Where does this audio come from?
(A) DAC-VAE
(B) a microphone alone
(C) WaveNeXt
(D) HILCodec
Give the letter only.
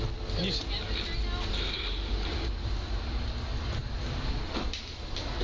B